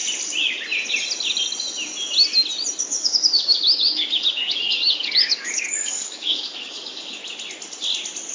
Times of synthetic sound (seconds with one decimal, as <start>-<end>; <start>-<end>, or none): 2.8-7.2